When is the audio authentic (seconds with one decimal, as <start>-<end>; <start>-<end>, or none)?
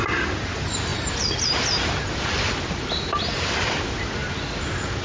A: 0.0-5.0